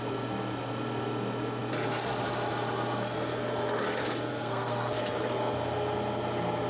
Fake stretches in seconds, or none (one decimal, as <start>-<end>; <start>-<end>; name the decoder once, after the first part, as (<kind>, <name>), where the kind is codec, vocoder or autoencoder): 4.3-5.0 (codec, SNAC)